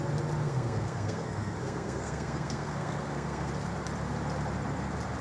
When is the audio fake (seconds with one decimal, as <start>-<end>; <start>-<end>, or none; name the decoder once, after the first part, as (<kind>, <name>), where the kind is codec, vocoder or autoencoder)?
0.4-3.5 (codec, SNAC)